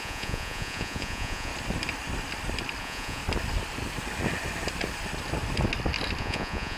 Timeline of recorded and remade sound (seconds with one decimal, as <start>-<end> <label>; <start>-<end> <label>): 0.0-1.5 remade; 1.5-2.8 recorded; 2.8-3.2 remade; 3.2-6.2 recorded; 6.2-6.8 remade